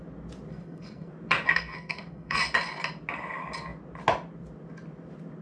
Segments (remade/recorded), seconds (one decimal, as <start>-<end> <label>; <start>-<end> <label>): 0.0-0.5 recorded; 0.5-1.1 remade; 1.1-1.5 recorded; 1.5-2.4 remade; 2.4-5.4 recorded